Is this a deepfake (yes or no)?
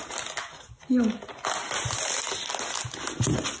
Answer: no